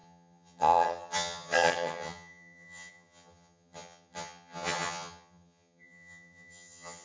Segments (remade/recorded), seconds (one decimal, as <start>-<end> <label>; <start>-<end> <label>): 0.0-7.0 remade